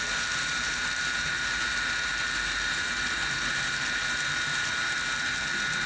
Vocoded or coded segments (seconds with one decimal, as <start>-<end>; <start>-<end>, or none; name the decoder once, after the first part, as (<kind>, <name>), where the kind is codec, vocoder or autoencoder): none